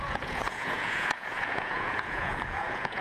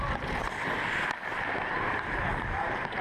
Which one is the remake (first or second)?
first